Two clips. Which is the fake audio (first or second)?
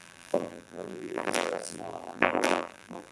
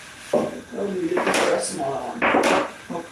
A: first